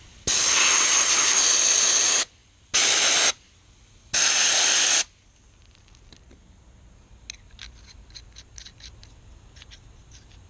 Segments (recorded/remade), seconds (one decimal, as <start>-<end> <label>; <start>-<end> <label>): 0.0-10.5 recorded